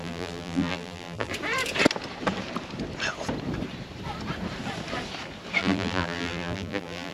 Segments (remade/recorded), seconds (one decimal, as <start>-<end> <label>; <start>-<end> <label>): 0.0-1.3 remade; 1.3-5.6 recorded; 5.6-7.1 remade